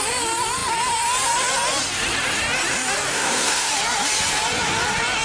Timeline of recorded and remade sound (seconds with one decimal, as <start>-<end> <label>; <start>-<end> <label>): 0.0-3.1 recorded; 3.1-3.7 remade; 3.7-5.2 recorded